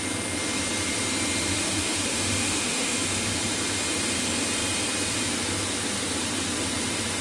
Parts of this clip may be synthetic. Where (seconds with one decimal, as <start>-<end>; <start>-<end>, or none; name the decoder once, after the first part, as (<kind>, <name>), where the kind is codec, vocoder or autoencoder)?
1.5-3.4 (autoencoder, DAC-VAE)